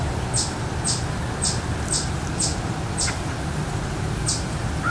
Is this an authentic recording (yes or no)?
yes